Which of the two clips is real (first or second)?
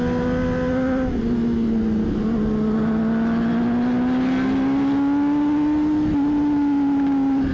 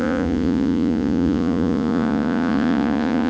first